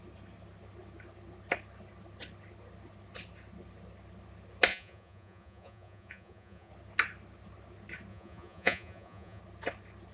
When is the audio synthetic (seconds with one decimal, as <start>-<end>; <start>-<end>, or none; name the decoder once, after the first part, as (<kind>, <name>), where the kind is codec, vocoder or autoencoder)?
4.7-6.7 (vocoder, Vocos); 8.1-9.4